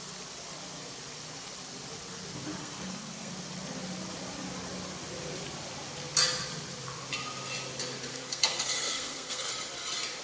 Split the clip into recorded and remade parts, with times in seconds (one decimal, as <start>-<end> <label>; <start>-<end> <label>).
0.0-2.6 recorded; 2.6-3.3 remade; 3.3-8.1 recorded; 8.1-9.5 remade; 9.5-10.2 recorded